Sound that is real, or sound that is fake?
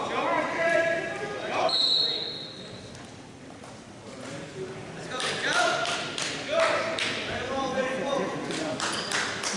fake